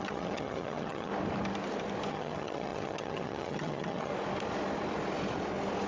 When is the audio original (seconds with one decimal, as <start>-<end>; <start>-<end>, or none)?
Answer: 1.1-2.1; 4.1-5.9